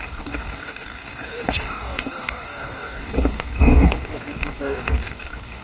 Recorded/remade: remade